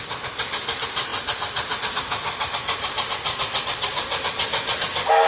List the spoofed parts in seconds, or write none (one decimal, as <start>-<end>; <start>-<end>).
none